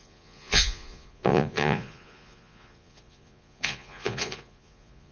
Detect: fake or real fake